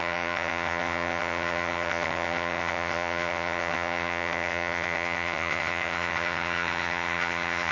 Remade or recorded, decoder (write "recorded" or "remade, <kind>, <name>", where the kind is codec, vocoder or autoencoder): remade, vocoder, HiFi-GAN